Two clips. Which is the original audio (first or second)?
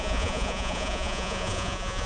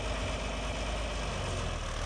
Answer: second